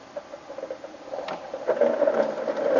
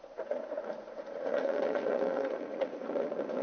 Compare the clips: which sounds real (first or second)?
first